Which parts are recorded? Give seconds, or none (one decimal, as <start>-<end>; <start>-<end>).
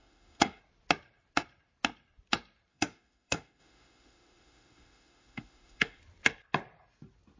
0.6-2.7; 6.0-7.4